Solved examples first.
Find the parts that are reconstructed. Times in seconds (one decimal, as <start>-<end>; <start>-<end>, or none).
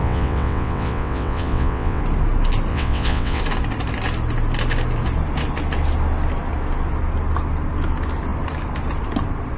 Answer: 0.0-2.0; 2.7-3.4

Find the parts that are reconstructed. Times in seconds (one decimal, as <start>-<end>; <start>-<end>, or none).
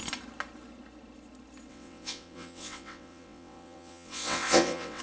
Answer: 1.7-5.0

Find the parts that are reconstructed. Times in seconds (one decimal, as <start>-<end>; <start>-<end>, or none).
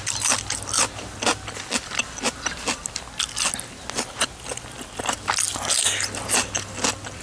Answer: none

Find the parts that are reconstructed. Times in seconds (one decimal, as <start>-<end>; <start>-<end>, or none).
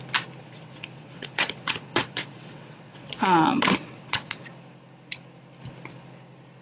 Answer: 0.4-4.4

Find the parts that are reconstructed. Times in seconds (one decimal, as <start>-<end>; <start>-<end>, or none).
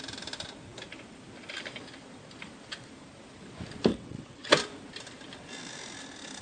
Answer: 3.9-4.5